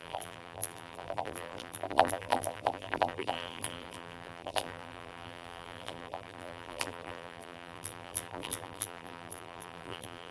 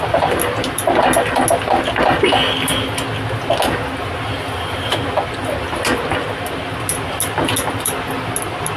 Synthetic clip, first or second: first